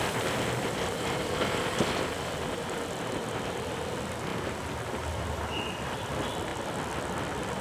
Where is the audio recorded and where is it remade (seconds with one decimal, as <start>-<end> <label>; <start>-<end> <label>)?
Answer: 0.0-7.6 recorded